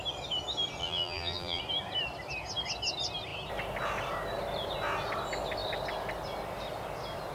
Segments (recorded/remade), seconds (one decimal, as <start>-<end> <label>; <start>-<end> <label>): 0.0-0.8 recorded; 0.8-1.6 remade; 1.6-7.3 recorded